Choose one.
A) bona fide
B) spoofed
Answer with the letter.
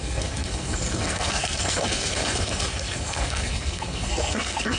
B